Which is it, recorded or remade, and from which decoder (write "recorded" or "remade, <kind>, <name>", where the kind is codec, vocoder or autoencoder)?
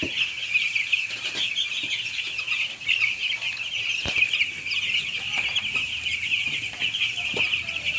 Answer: recorded